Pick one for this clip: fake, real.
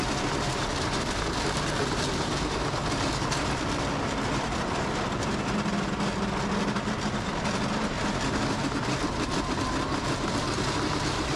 real